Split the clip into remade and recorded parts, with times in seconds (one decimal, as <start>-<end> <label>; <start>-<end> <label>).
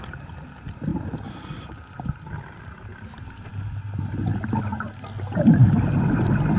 0.0-6.6 recorded